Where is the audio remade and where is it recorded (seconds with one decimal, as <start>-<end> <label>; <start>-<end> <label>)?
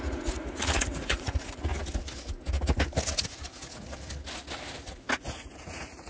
0.0-1.7 remade; 1.7-5.2 recorded; 5.2-6.1 remade